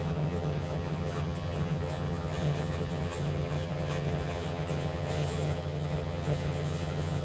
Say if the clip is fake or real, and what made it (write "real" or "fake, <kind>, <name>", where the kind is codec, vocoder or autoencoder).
fake, vocoder, HiFi-GAN